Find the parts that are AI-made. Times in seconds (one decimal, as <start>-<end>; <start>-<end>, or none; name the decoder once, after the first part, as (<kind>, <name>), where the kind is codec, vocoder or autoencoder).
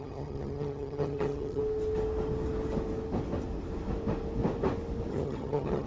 0.0-1.6 (vocoder, HiFi-GAN); 5.1-5.9